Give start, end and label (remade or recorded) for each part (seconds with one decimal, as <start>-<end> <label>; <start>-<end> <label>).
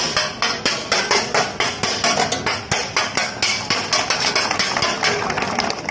0.0-5.9 recorded